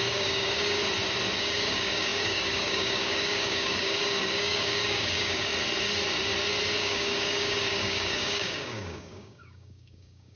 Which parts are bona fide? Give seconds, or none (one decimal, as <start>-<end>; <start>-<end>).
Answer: 0.8-1.4; 5.5-6.8